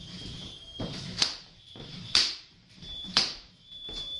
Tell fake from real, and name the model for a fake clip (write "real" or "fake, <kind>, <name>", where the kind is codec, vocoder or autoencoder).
fake, vocoder, BigVGAN v2